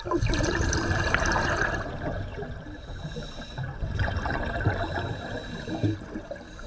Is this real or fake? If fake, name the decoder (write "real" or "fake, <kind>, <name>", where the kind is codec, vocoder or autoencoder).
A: fake, vocoder, BigVGAN v2